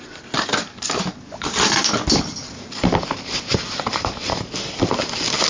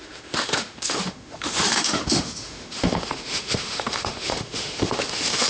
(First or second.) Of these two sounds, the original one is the first